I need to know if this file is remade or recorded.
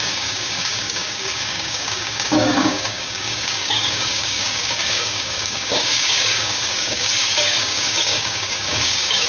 remade